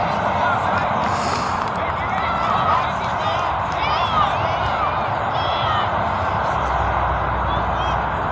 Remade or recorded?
recorded